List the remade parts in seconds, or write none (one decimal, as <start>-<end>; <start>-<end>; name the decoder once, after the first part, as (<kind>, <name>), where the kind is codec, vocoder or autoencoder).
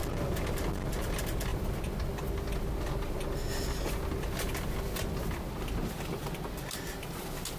none